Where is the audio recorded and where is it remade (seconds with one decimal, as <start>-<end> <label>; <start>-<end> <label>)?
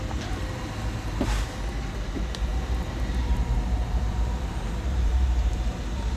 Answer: 0.0-2.5 recorded; 2.5-5.8 remade; 5.8-6.2 recorded